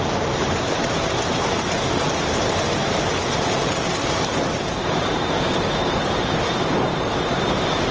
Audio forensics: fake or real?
fake